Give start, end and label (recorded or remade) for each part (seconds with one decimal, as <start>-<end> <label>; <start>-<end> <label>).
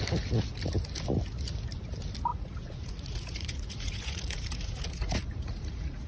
0.0-2.3 recorded; 2.3-6.1 remade